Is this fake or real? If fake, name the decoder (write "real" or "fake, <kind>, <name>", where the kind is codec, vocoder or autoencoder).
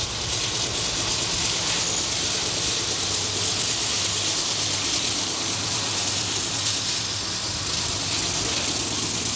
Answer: real